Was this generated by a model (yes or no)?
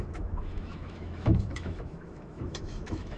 yes